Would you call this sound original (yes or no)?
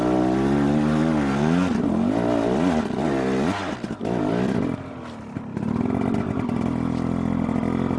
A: yes